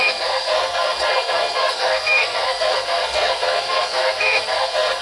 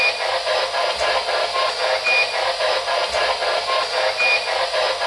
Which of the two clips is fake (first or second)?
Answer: first